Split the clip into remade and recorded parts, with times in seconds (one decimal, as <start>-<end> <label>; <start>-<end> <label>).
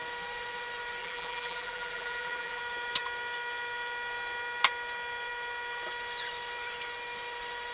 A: 0.0-1.0 recorded; 1.0-2.6 remade; 2.6-7.7 recorded